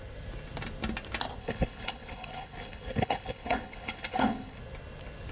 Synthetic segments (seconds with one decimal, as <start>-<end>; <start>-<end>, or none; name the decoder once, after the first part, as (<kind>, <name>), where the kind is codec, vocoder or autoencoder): 1.4-4.6 (codec, HILCodec)